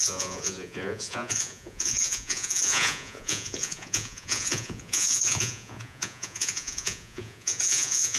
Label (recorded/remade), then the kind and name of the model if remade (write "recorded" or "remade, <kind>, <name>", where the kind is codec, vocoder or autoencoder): remade, vocoder, Vocos